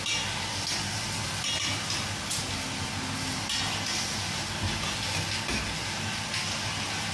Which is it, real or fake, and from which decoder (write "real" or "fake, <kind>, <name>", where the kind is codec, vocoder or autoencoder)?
real